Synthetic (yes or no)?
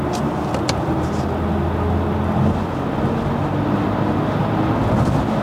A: no